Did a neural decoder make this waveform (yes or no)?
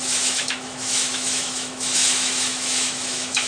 yes